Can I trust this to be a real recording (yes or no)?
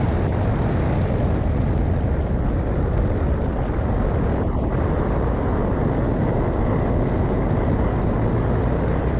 yes